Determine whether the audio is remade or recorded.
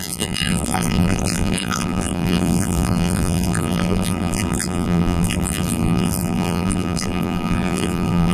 remade